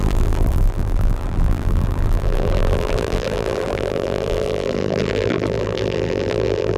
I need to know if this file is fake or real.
fake